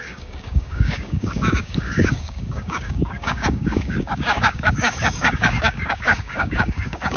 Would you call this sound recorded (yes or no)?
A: no